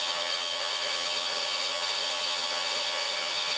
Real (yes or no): no